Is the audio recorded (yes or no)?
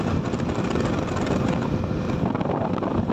yes